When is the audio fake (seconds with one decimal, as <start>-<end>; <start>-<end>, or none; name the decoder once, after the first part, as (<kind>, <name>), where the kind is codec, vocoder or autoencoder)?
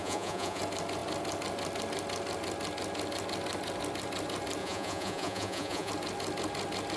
0.0-0.6 (vocoder, Vocos); 4.6-5.9